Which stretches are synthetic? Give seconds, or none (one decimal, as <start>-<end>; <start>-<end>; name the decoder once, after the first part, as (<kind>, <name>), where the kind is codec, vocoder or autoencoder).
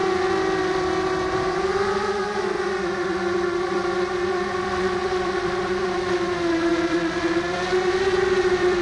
0.6-8.8 (vocoder, BigVGAN v2)